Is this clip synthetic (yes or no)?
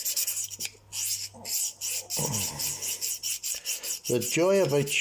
no